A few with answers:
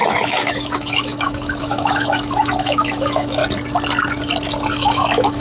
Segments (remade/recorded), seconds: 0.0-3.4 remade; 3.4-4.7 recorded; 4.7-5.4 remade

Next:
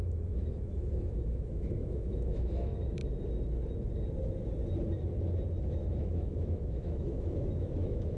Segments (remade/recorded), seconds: 0.0-3.0 remade; 3.0-5.6 recorded; 5.6-8.2 remade